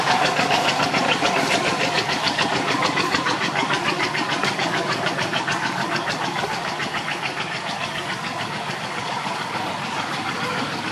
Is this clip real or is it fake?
fake